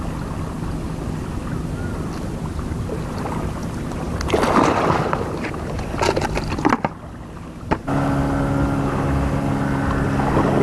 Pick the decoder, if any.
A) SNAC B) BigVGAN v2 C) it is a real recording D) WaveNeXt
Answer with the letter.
C